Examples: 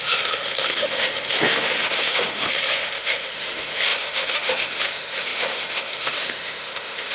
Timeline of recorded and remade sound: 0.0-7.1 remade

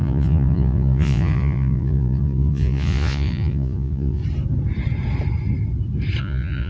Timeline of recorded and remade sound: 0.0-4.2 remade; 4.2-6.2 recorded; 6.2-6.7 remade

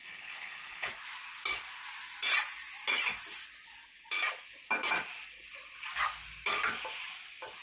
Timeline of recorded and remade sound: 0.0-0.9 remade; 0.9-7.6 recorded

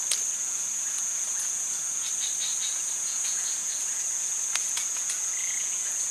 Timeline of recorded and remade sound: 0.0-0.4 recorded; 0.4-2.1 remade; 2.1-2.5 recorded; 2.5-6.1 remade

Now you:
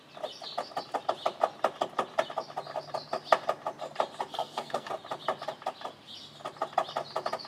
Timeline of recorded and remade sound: 0.0-4.3 recorded; 4.3-4.9 remade; 4.9-7.5 recorded

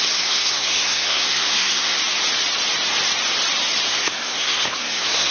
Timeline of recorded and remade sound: 0.0-2.0 remade; 2.0-3.9 recorded; 3.9-5.3 remade